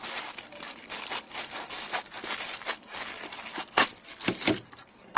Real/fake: real